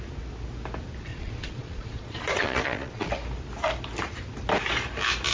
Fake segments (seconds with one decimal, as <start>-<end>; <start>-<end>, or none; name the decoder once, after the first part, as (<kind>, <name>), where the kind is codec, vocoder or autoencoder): 1.1-3.1 (vocoder, Vocos)